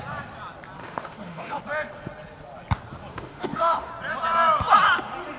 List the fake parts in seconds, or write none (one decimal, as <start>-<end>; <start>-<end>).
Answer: 0.8-1.6; 3.1-3.9